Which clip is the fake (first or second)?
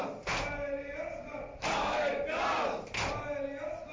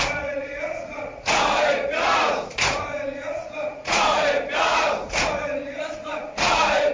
second